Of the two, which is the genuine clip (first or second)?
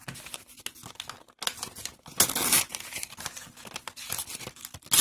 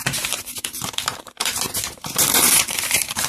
first